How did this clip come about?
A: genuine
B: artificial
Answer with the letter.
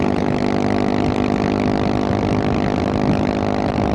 A